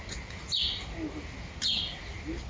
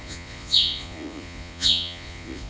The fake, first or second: second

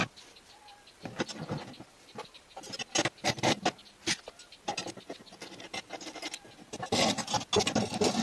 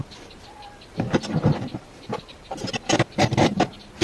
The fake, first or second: second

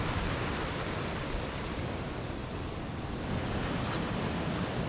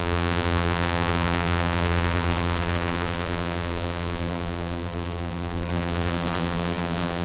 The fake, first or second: second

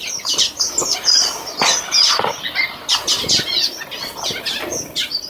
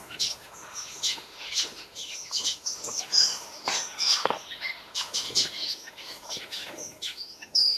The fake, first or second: second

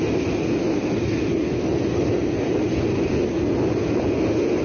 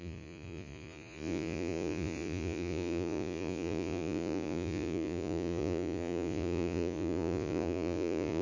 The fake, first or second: second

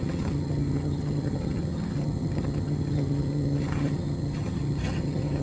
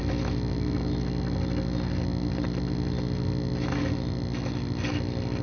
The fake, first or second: first